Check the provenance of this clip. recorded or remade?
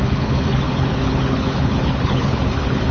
remade